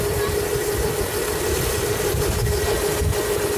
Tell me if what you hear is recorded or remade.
recorded